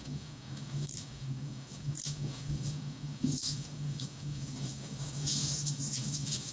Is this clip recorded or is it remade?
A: remade